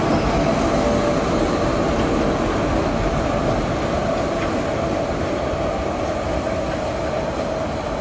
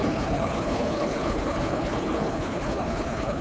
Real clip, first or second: first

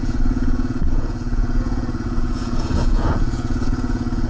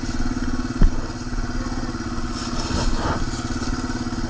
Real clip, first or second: second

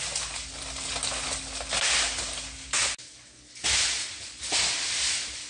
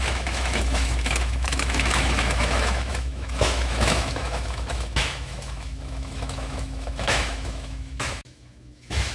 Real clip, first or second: first